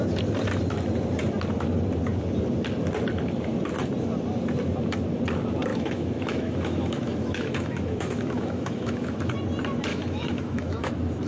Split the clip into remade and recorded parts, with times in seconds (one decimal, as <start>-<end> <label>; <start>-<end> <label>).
0.0-5.7 recorded; 5.7-9.2 remade; 9.2-9.9 recorded; 9.9-10.9 remade; 10.9-11.3 recorded